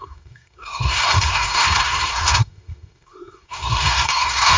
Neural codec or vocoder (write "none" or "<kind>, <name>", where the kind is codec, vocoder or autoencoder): codec, SNAC